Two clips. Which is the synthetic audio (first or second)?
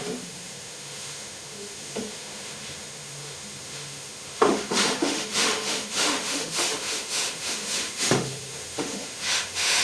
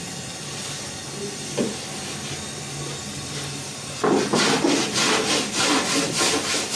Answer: first